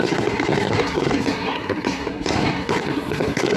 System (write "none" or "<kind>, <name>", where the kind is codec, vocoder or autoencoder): codec, SNAC